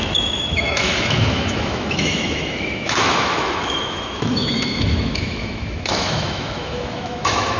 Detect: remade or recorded remade